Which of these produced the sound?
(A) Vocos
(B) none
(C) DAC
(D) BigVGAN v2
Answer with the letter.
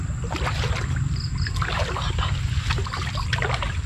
B